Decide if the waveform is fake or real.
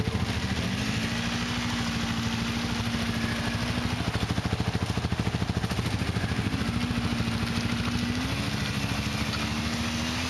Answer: real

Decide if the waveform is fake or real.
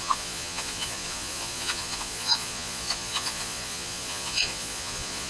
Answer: fake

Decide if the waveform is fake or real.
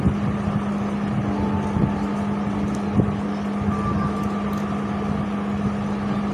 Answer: real